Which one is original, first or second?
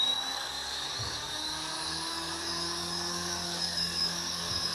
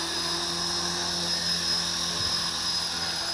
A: second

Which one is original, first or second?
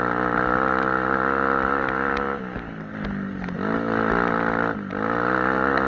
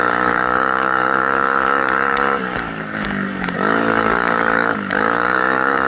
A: first